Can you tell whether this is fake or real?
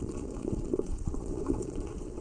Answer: fake